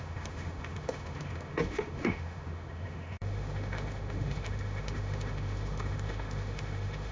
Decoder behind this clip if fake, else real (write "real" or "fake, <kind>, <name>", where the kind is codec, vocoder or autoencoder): fake, autoencoder, DAC-VAE